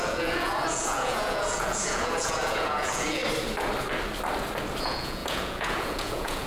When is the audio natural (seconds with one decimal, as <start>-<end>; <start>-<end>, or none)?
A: 3.2-4.8

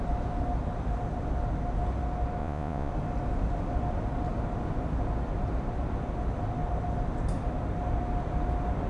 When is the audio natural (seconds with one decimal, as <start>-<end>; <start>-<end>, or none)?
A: 0.0-2.4; 2.9-8.9

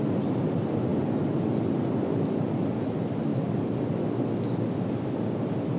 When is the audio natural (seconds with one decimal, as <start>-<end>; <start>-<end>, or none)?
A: 0.0-5.8

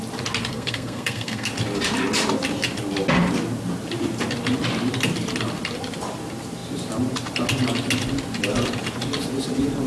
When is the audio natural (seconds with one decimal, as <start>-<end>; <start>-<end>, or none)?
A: 0.0-0.5; 1.5-9.9